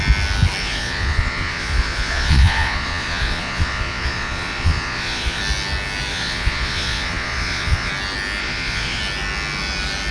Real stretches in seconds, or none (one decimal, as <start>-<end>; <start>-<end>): 0.0-0.6; 5.4-6.1; 7.9-8.4; 9.0-10.1